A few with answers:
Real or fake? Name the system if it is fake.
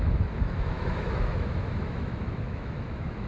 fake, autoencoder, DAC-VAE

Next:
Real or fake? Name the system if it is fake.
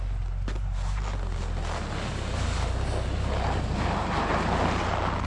real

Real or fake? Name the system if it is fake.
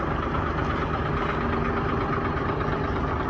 real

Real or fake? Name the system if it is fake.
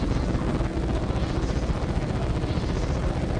real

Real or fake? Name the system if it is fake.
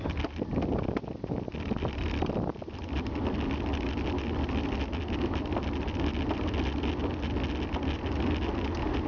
real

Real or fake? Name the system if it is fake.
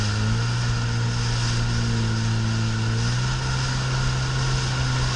real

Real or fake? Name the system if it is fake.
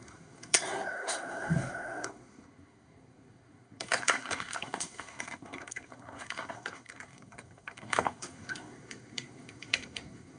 fake, codec, SNAC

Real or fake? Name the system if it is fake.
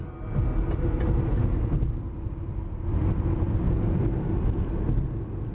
real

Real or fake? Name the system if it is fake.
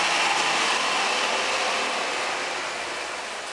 real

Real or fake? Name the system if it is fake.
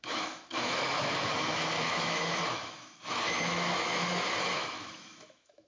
fake, autoencoder, DAC-VAE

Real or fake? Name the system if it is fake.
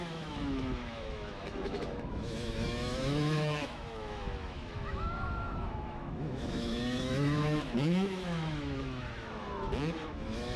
fake, autoencoder, DAC-VAE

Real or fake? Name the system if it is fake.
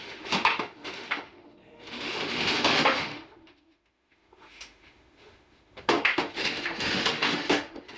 fake, autoencoder, DAC-VAE